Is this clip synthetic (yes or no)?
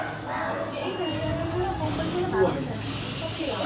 no